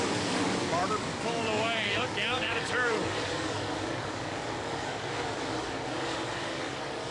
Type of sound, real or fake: fake